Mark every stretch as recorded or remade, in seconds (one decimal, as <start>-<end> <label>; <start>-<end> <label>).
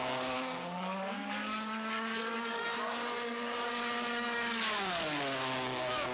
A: 0.0-6.1 remade